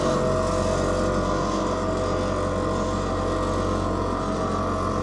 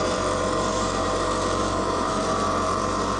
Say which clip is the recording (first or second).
first